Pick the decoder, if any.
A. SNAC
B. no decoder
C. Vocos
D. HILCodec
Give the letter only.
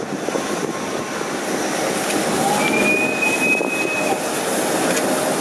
B